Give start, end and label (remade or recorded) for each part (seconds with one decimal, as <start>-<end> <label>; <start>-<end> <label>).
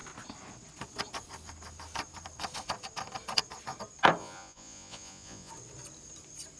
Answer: 0.0-4.2 recorded; 4.2-5.5 remade; 5.5-6.6 recorded